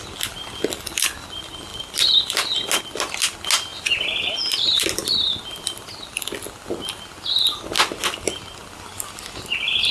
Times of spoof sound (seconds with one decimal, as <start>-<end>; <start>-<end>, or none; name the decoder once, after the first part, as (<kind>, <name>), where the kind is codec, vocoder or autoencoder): none